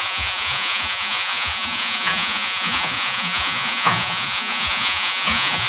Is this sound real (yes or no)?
no